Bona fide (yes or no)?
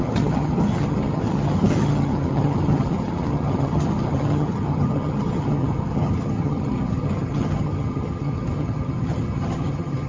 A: no